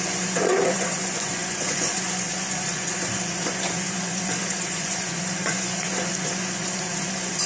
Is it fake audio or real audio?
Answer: fake